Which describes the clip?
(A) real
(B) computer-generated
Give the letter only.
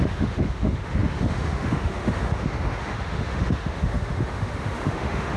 B